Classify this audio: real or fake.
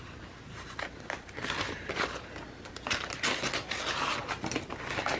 real